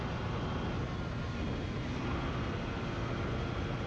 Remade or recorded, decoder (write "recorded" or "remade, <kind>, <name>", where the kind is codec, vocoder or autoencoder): recorded